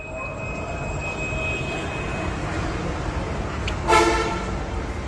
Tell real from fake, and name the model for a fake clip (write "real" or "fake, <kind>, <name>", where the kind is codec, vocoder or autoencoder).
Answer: real